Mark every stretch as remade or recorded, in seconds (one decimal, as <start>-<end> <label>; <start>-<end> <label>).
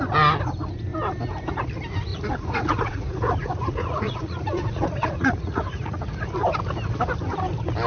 0.0-2.1 recorded; 2.1-6.0 remade; 6.0-7.9 recorded